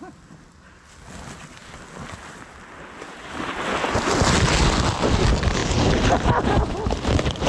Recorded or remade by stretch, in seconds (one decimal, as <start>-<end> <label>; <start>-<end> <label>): 0.0-5.6 recorded; 5.6-6.8 remade; 6.8-7.5 recorded